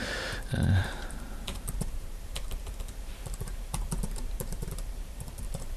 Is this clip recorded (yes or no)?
no